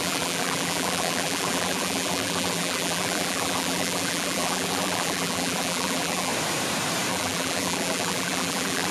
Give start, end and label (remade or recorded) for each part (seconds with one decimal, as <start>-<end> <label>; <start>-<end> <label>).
0.0-6.3 remade; 6.3-7.1 recorded; 7.1-8.9 remade